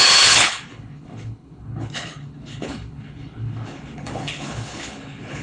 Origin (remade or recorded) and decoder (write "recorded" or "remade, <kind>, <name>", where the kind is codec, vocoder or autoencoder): remade, codec, HILCodec